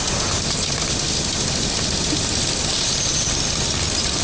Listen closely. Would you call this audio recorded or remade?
recorded